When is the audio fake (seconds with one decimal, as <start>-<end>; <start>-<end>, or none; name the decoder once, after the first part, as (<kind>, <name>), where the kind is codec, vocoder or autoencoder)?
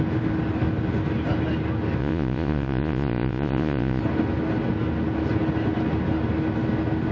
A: 2.0-4.0 (vocoder, Vocos)